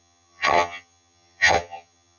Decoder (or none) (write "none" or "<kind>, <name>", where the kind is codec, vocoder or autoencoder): vocoder, HiFi-GAN